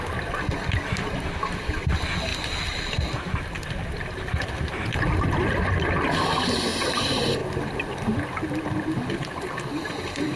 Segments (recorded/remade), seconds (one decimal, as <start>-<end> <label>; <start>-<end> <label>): 0.0-10.4 recorded